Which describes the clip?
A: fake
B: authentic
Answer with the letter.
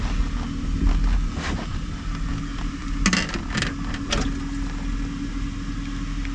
B